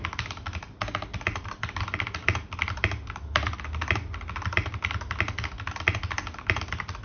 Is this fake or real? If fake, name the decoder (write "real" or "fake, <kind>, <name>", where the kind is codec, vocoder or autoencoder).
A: real